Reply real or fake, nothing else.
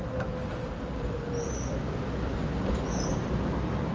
real